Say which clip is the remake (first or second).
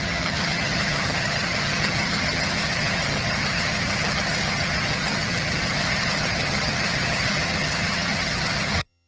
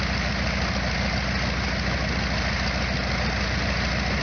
first